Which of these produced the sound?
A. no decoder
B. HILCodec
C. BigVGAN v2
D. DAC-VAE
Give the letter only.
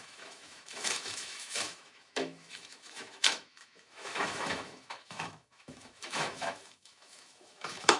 D